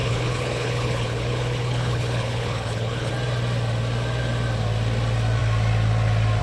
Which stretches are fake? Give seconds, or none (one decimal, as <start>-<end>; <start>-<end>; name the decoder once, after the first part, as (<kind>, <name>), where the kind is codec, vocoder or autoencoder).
0.0-3.1 (codec, HILCodec)